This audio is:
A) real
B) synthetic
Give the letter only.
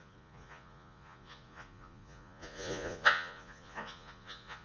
B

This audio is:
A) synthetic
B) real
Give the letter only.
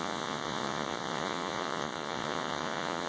A